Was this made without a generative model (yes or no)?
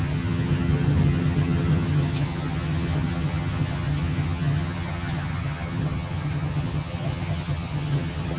no